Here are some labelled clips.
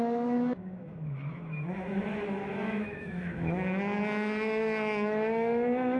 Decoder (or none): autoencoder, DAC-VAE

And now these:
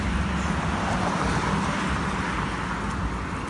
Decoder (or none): none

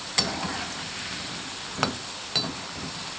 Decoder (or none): none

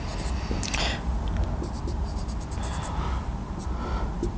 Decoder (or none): none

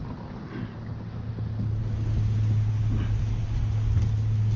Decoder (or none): none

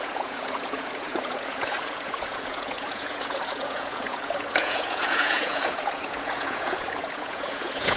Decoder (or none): vocoder, Vocos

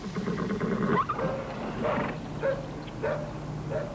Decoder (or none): none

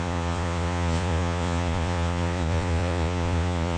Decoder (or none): vocoder, Vocos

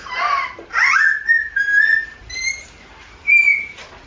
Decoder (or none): none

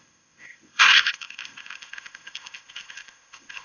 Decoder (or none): codec, ZipCodec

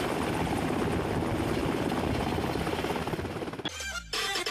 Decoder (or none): none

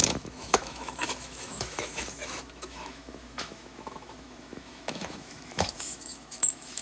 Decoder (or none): autoencoder, DAC-VAE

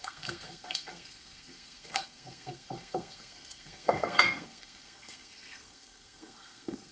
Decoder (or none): codec, SNAC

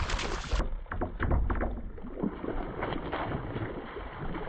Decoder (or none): none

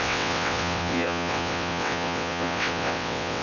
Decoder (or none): vocoder, WaveNeXt